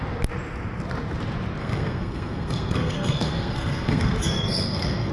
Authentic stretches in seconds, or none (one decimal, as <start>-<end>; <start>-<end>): 0.0-1.6